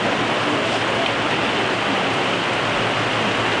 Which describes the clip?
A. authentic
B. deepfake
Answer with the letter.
A